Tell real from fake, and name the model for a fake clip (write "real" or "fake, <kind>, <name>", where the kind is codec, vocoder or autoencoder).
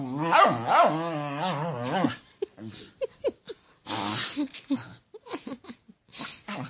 real